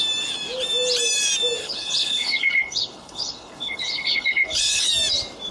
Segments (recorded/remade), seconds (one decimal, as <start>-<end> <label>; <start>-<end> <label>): 0.0-1.6 recorded; 1.6-4.9 remade; 4.9-5.5 recorded